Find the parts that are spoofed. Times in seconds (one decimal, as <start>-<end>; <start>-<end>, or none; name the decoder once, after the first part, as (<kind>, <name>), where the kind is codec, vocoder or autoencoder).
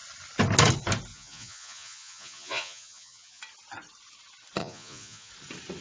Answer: 1.1-3.4 (vocoder, Vocos); 4.6-5.3